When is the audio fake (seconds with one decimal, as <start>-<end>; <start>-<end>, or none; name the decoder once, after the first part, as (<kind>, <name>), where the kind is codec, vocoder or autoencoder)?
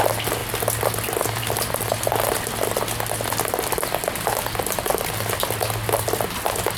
none